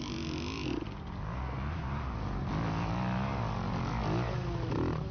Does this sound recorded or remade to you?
recorded